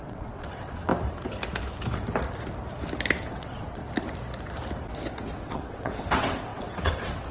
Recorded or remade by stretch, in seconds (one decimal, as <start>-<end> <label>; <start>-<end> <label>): 0.0-0.9 remade; 0.9-3.3 recorded; 3.3-3.8 remade; 3.8-5.3 recorded; 5.3-7.3 remade